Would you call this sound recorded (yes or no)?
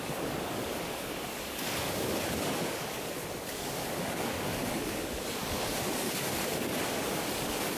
no